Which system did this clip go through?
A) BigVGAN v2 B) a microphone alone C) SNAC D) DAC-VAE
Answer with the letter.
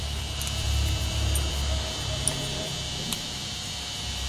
A